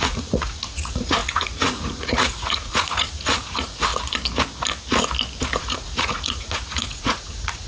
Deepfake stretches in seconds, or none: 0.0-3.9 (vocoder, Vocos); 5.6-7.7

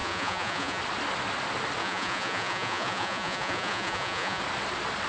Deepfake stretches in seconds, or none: 0.0-0.8 (vocoder, Vocos); 1.8-4.4

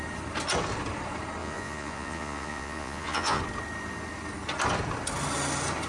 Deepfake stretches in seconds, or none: 1.4-3.4 (vocoder, Vocos)

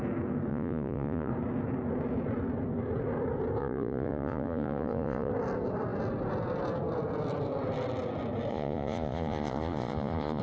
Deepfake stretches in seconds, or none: 0.5-1.3 (vocoder, Vocos); 3.6-5.3; 8.5-10.4

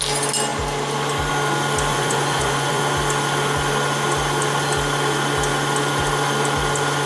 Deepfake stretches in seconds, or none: 1.9-2.8 (vocoder, Vocos)

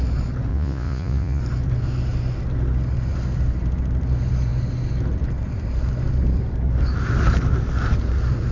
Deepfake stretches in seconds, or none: 0.5-1.4 (vocoder, Vocos)

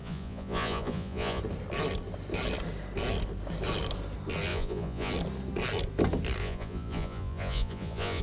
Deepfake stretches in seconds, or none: 0.0-1.4 (vocoder, Vocos); 4.5-5.1; 6.4-8.2

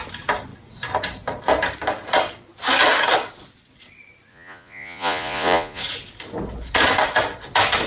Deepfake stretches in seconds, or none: 4.3-5.8 (vocoder, Vocos)